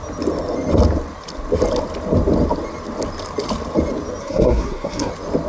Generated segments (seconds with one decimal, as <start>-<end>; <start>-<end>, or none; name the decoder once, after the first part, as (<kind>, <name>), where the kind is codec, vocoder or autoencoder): 4.2-5.1 (codec, SNAC)